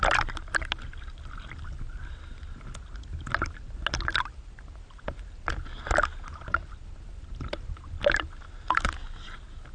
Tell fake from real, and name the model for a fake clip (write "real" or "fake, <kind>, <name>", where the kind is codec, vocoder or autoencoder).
real